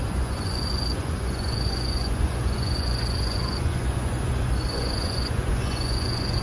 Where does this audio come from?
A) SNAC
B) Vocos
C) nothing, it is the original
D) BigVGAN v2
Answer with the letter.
B